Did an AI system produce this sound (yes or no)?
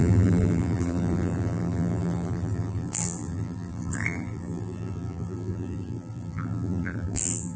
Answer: yes